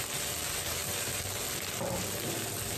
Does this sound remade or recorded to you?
recorded